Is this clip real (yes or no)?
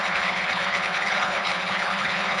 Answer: no